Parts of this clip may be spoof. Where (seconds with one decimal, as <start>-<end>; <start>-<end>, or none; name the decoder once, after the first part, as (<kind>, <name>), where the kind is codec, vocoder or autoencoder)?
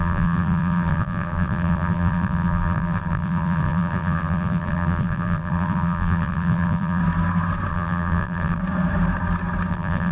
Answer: 0.0-7.0 (vocoder, BigVGAN v2); 7.7-8.6; 9.7-10.1